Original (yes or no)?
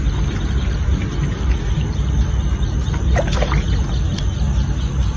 yes